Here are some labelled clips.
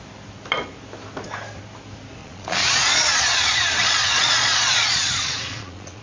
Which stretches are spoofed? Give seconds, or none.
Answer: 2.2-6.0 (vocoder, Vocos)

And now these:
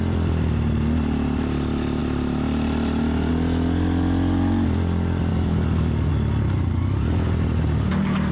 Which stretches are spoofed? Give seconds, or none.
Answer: 5.3-6.1 (codec, DAC)

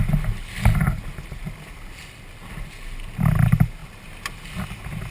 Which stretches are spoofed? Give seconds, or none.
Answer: none

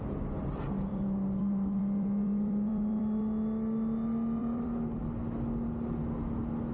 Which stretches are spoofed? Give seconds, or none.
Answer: 0.9-3.2 (vocoder, BigVGAN v2); 4.4-5.0

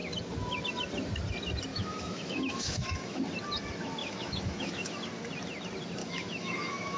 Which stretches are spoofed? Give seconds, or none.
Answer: 1.7-3.2 (autoencoder, DAC-VAE); 4.0-5.0; 6.0-7.0

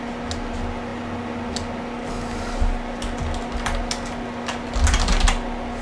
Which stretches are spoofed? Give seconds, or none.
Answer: none

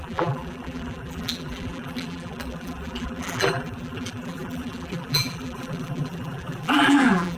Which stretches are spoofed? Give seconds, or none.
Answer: 0.0-7.4 (vocoder, BigVGAN v2)